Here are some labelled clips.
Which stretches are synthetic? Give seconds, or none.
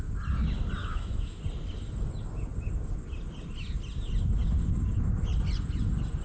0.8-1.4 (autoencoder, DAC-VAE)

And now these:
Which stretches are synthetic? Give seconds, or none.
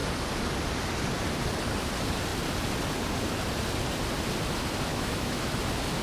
4.9-5.5 (autoencoder, DAC-VAE)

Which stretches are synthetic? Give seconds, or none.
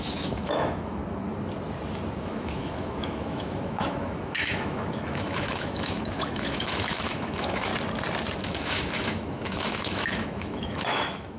0.0-1.0 (autoencoder, DAC-VAE); 2.2-7.7; 8.4-11.4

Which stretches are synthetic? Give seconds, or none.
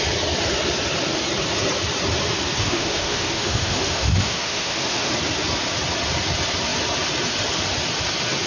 2.6-5.1 (autoencoder, DAC-VAE)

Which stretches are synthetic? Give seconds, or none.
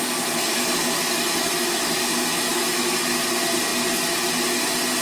0.5-3.0 (autoencoder, DAC-VAE)